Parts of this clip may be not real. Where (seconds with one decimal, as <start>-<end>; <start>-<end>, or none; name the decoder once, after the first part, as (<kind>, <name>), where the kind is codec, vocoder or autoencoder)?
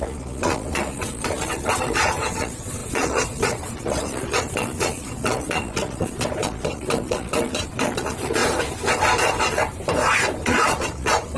0.0-8.4 (vocoder, Vocos); 9.0-9.6; 10.4-11.4